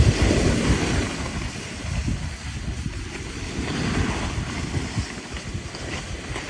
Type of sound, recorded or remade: recorded